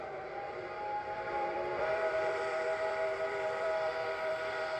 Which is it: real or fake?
fake